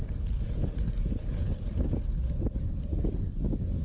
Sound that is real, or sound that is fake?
real